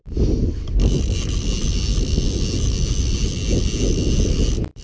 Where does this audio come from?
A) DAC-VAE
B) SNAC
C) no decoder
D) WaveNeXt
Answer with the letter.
C